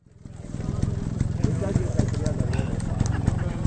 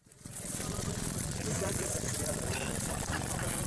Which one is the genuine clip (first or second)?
first